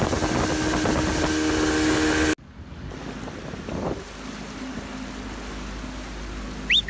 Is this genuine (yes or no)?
yes